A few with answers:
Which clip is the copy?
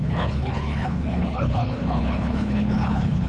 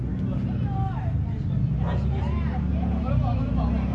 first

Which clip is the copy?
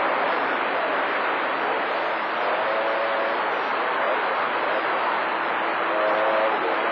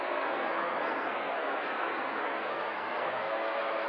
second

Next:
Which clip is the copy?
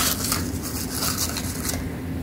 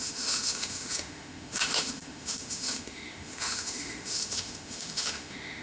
second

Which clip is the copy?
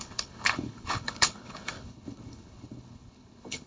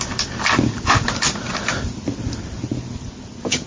first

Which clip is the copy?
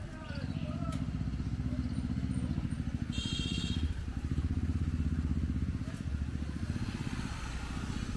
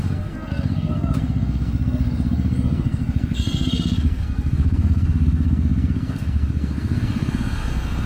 second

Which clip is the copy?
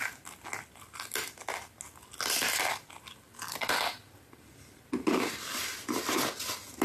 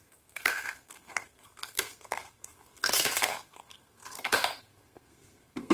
second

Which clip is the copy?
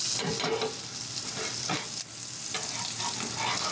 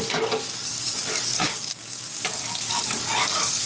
second